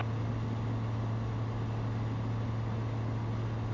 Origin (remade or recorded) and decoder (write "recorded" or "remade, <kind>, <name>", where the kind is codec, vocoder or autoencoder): recorded